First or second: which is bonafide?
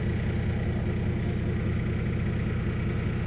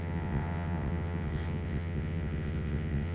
first